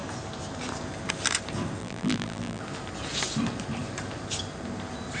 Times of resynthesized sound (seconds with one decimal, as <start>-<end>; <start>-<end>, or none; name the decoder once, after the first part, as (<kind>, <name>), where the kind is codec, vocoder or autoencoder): 1.8-2.6 (vocoder, BigVGAN v2)